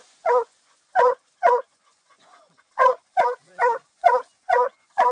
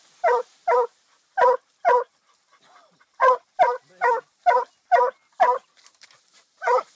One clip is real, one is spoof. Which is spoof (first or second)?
first